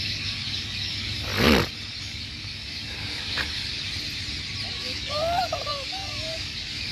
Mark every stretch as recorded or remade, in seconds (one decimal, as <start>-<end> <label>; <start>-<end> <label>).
0.0-1.3 remade; 1.3-2.0 recorded; 2.0-3.7 remade; 3.7-4.7 recorded; 4.7-6.9 remade